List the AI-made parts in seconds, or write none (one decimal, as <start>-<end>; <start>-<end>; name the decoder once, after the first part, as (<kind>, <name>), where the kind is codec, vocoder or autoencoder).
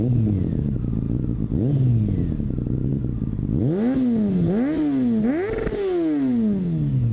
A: none